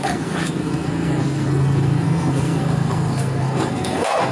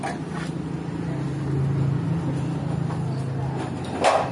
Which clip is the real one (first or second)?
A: second